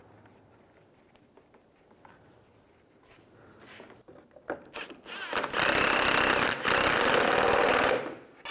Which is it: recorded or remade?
recorded